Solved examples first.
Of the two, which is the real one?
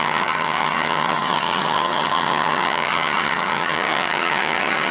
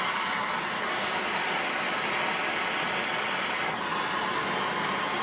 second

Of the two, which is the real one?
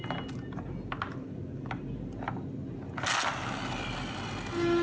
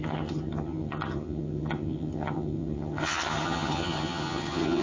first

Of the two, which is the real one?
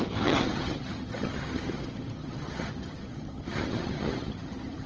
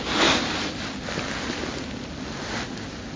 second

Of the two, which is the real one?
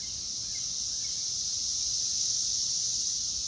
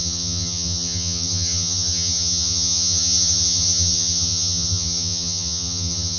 first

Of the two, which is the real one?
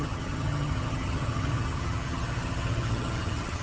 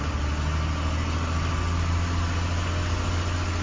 second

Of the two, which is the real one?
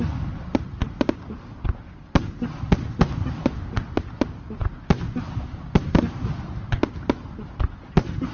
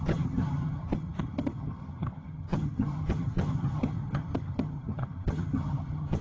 first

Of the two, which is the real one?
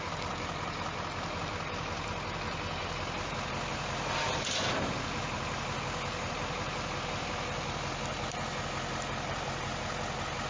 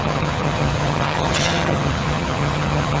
first